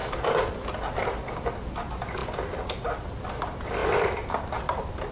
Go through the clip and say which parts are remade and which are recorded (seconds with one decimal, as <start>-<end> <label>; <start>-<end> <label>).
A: 0.0-5.1 recorded